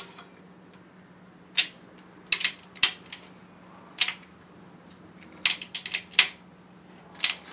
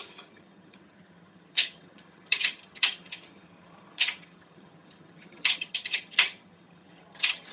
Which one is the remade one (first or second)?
second